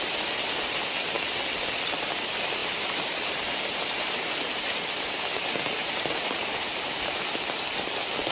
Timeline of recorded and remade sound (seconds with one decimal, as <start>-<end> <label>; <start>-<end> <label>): 0.0-2.6 recorded; 2.6-7.2 remade; 7.2-8.3 recorded